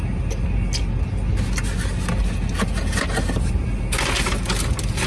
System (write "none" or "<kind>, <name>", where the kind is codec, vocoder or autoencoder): none